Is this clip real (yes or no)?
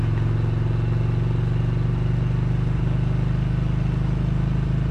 yes